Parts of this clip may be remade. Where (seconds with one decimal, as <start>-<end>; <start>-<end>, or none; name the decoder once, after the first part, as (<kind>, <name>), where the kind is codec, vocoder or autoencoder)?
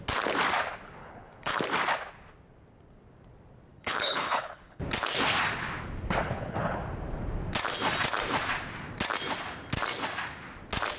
1.0-1.6 (codec, HILCodec); 3.7-4.8; 6.2-6.8